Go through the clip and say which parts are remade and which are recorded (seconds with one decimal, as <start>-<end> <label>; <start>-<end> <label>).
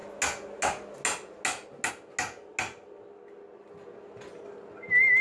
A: 0.0-5.2 recorded